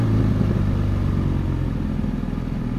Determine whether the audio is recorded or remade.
recorded